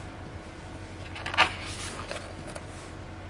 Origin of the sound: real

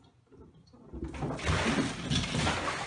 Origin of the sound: real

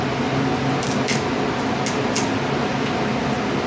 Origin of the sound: real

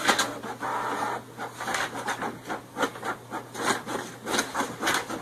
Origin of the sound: real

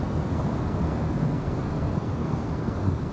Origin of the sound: fake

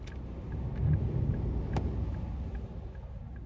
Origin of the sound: real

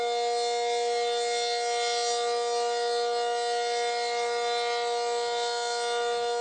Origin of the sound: real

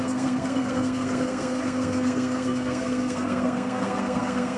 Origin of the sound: fake